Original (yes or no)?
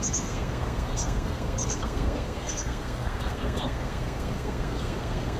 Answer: no